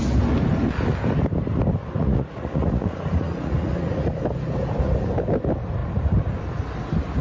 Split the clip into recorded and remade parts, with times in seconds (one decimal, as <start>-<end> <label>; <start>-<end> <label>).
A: 0.0-1.8 recorded; 1.8-4.1 remade; 4.1-7.2 recorded